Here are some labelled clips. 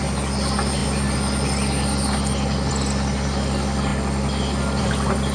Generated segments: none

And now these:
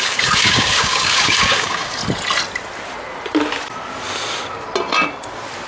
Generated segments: 0.0-2.0 (codec, DAC)

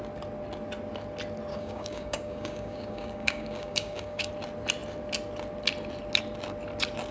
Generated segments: 1.5-4.3 (codec, DAC)

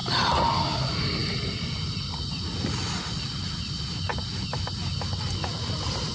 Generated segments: none

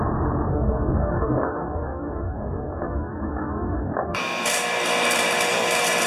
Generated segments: 0.5-4.2 (codec, DAC)

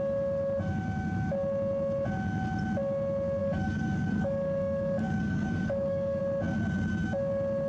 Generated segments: 3.4-6.2 (codec, DAC)

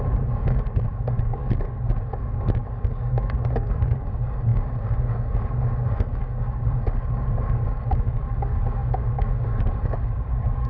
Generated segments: 0.0-10.7 (codec, DAC)

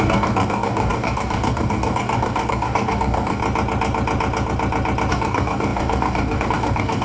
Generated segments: 0.0-3.4 (codec, DAC); 5.1-7.0